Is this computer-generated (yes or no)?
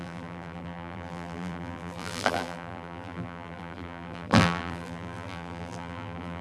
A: yes